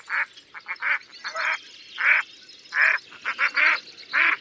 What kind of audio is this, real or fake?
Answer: real